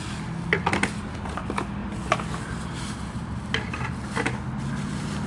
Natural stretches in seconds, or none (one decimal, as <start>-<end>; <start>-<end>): 0.0-5.3